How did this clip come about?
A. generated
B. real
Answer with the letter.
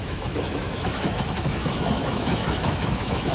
A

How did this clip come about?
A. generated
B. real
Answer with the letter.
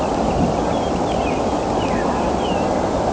B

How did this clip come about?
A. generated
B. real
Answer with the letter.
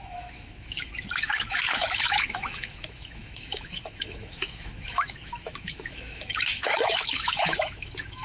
A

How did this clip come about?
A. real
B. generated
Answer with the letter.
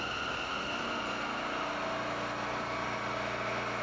A